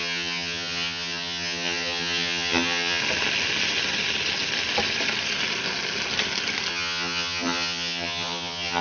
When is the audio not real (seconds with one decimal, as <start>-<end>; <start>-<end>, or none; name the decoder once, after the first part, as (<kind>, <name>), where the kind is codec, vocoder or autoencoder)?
0.0-3.0 (vocoder, HiFi-GAN); 6.7-8.8